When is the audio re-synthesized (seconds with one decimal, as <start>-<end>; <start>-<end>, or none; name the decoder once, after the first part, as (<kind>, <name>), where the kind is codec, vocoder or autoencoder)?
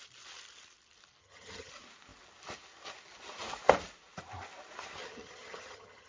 1.2-1.7 (vocoder, HiFi-GAN); 5.0-6.1